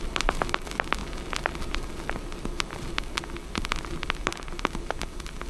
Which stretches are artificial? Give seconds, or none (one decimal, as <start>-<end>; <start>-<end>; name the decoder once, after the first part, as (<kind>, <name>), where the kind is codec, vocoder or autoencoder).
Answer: 0.0-5.5 (vocoder, BigVGAN v2)